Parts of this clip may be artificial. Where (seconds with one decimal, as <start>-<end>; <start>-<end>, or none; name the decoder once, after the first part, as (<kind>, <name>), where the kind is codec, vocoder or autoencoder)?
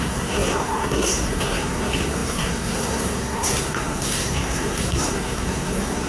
0.0-6.1 (codec, SNAC)